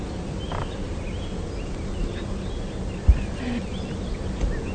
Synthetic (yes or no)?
no